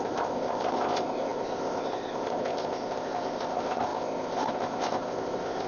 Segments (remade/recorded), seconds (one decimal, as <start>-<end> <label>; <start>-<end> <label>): 0.0-5.7 remade